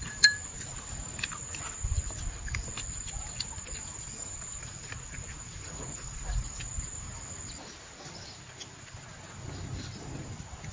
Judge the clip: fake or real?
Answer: real